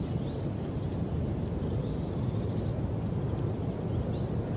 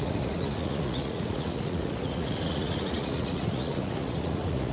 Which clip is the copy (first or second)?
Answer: second